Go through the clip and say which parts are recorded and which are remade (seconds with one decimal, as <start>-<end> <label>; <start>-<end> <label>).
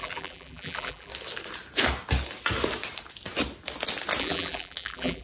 0.0-1.1 remade; 1.1-4.2 recorded; 4.2-5.2 remade